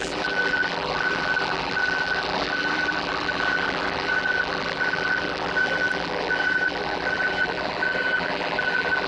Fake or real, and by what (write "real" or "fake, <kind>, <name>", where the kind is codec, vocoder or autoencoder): fake, vocoder, BigVGAN v2